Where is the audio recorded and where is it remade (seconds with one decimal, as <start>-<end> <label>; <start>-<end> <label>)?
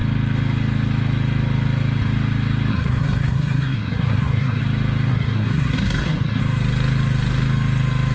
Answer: 0.0-2.7 recorded; 2.7-4.6 remade; 4.6-5.1 recorded; 5.1-6.4 remade; 6.4-8.1 recorded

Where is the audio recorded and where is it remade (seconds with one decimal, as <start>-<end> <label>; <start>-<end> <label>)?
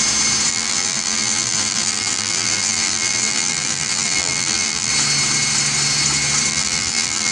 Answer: 0.0-0.5 recorded; 0.5-4.9 remade; 4.9-6.5 recorded; 6.5-7.3 remade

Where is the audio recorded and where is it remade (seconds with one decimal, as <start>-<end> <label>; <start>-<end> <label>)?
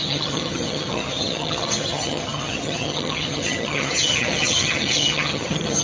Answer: 0.0-5.8 remade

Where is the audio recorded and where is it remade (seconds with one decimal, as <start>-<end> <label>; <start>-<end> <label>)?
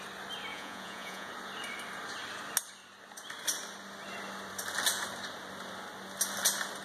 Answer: 0.0-0.5 recorded; 0.5-1.3 remade; 1.3-6.8 recorded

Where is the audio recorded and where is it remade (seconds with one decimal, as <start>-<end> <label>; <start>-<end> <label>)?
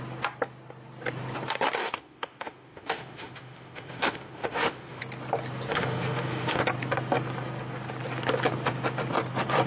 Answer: 0.0-1.8 recorded; 1.8-5.0 remade; 5.0-5.7 recorded; 5.7-6.6 remade; 6.6-9.7 recorded